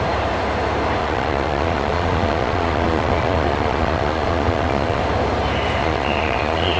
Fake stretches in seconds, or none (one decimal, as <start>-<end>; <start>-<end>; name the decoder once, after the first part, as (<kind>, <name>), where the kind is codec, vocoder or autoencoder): 1.0-5.0 (vocoder, Vocos); 5.8-6.8